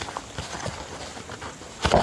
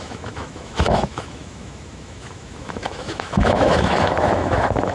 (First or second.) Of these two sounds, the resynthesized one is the second